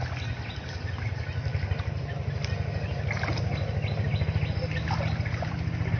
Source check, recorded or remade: recorded